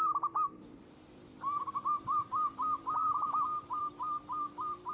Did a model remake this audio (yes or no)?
yes